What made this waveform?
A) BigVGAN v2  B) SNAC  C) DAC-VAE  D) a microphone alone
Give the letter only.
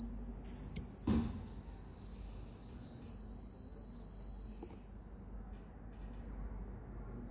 D